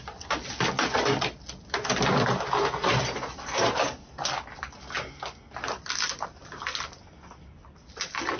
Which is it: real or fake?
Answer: real